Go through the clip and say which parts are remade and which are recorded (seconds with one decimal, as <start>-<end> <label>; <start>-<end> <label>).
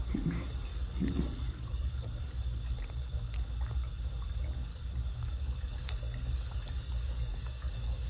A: 0.0-0.7 recorded; 0.7-2.6 remade; 2.6-4.7 recorded; 4.7-8.1 remade